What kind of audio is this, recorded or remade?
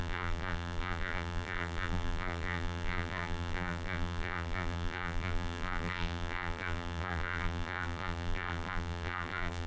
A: remade